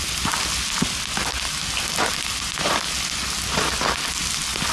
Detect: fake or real real